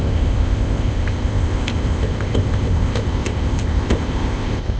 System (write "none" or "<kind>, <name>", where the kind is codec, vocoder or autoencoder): codec, ZipCodec